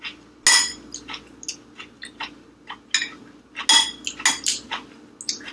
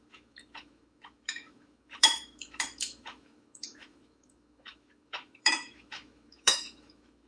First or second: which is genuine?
first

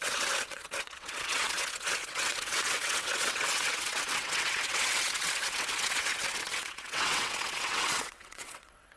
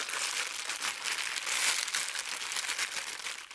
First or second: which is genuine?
second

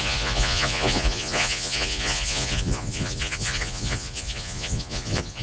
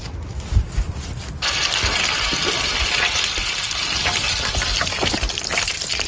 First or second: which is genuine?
second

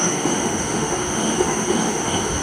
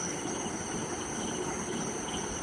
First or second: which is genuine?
second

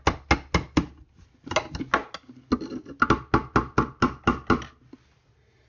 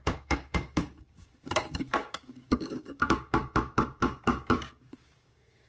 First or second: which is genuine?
first